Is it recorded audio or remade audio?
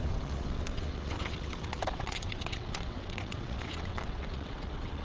remade